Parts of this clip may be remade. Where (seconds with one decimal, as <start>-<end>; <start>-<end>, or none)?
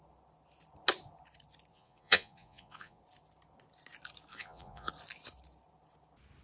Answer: 1.7-3.0; 4.3-4.9